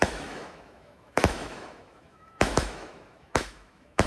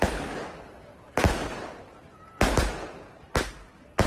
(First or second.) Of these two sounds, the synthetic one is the first